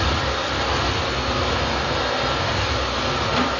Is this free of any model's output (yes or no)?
yes